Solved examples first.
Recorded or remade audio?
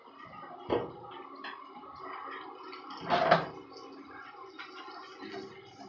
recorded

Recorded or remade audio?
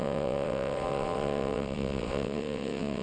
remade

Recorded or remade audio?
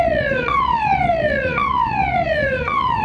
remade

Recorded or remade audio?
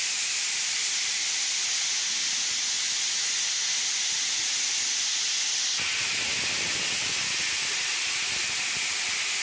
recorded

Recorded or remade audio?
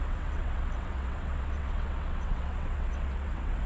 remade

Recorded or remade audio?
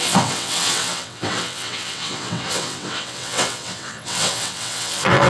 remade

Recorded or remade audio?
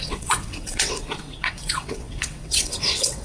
remade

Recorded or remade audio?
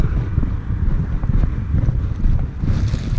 recorded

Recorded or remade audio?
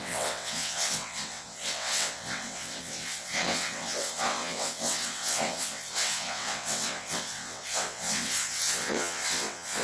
remade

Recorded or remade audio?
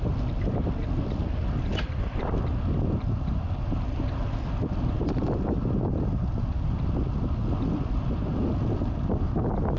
recorded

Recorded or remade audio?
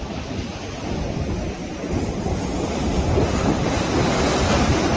recorded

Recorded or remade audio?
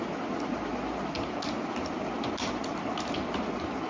recorded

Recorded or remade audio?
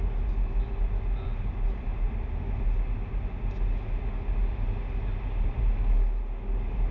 recorded